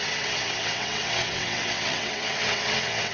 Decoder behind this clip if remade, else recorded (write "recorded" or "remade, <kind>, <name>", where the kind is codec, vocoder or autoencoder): remade, vocoder, WaveNeXt